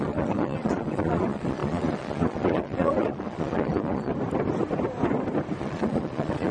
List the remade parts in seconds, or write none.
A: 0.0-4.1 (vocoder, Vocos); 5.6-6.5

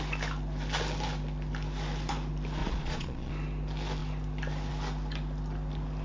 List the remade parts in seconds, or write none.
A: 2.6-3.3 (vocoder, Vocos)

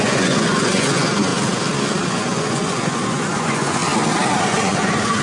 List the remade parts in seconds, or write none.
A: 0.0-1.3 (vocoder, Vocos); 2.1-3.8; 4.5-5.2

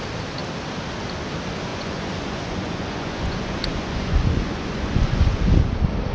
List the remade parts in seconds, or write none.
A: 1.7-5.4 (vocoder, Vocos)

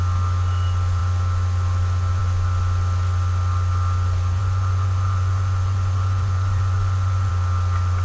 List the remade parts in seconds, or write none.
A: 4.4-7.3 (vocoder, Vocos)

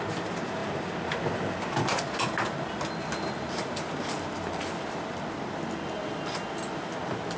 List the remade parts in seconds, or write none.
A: none

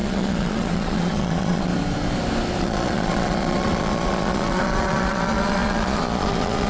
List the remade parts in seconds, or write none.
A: 0.0-1.7 (vocoder, Vocos); 2.6-6.7

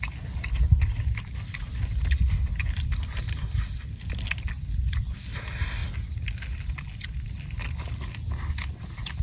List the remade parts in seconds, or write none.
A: none